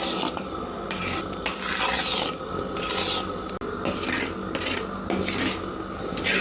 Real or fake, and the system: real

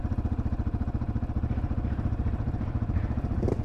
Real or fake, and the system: fake, vocoder, BigVGAN v2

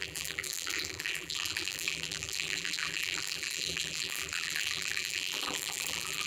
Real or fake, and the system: fake, vocoder, BigVGAN v2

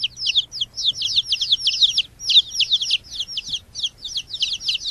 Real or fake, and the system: real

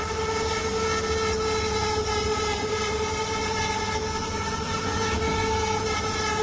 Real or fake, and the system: real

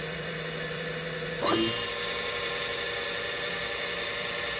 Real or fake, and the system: fake, vocoder, BigVGAN v2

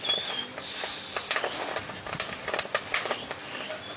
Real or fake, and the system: fake, vocoder, BigVGAN v2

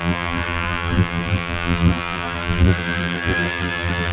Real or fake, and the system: fake, vocoder, BigVGAN v2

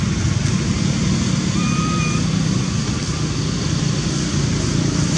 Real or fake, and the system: real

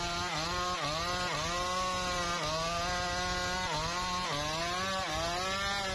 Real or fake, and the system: real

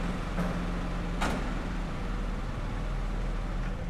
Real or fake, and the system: real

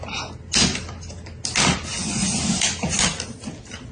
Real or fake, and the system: real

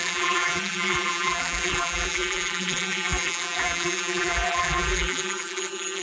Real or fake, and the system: fake, vocoder, BigVGAN v2